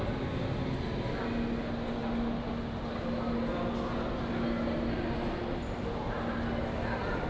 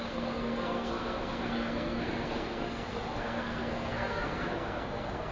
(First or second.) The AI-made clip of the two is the second